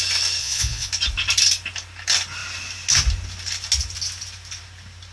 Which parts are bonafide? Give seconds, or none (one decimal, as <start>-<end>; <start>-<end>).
0.0-0.4; 0.9-5.1